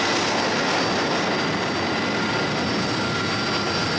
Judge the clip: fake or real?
real